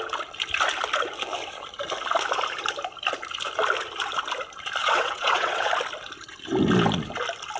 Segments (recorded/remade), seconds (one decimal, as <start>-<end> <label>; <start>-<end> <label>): 0.0-4.8 recorded; 4.8-5.7 remade; 5.7-7.6 recorded